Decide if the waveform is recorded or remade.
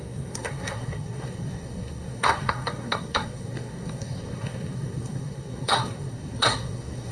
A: remade